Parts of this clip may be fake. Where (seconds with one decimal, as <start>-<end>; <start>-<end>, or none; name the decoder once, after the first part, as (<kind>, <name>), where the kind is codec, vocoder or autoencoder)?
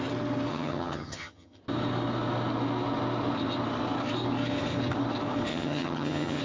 0.5-1.6 (vocoder, HiFi-GAN); 5.5-6.4